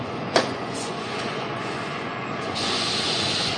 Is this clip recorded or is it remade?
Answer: remade